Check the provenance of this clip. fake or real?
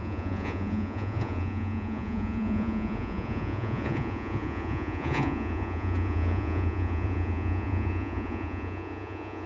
fake